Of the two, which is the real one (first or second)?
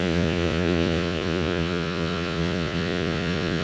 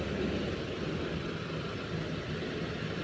second